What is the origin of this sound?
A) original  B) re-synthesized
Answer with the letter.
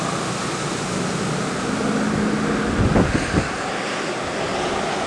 A